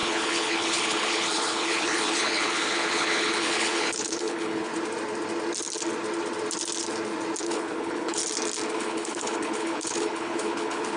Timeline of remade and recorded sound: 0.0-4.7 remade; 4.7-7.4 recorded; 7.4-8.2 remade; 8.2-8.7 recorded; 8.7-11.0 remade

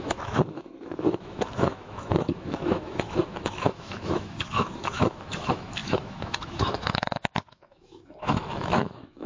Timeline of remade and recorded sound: 0.0-9.3 remade

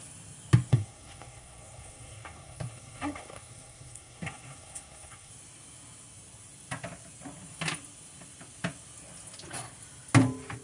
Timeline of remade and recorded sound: 0.0-0.7 recorded; 0.7-5.3 remade; 5.3-10.6 recorded

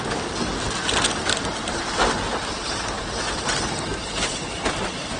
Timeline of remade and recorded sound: 0.0-5.2 recorded

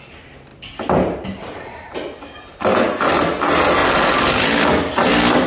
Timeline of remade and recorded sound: 0.0-2.7 recorded; 2.7-3.2 remade; 3.2-3.8 recorded; 3.8-5.5 remade

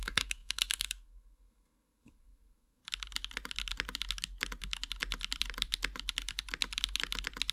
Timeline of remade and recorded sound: 0.0-2.8 remade; 2.8-7.5 recorded

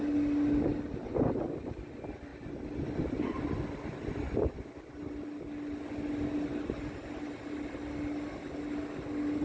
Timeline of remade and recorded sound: 0.0-9.4 recorded

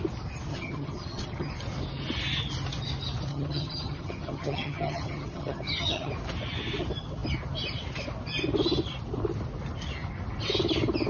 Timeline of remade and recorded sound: 0.0-0.5 recorded; 0.5-1.5 remade; 1.5-3.3 recorded; 3.3-6.1 remade; 6.1-11.1 recorded